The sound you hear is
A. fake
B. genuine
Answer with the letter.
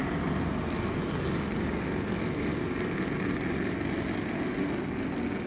B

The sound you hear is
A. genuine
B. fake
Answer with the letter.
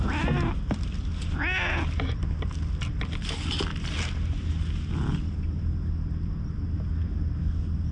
A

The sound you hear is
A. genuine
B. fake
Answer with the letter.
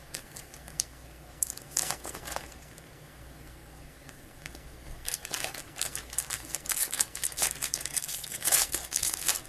B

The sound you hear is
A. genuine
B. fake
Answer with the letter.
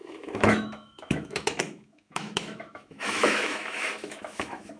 B